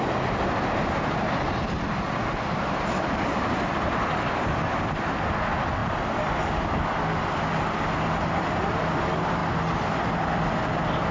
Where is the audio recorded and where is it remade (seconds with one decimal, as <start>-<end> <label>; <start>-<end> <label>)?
0.0-11.1 recorded